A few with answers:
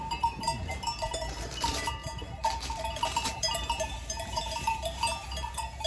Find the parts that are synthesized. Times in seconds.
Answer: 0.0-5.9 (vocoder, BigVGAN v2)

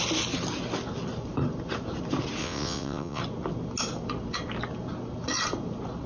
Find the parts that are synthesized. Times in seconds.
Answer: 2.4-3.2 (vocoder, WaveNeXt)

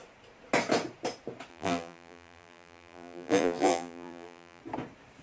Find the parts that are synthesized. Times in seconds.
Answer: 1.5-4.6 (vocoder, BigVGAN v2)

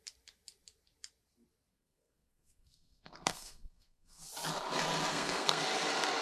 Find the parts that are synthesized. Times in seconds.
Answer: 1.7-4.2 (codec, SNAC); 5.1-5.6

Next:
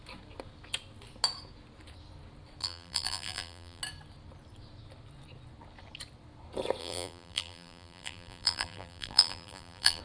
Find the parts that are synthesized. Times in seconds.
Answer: 2.6-3.8 (vocoder, BigVGAN v2); 6.8-10.0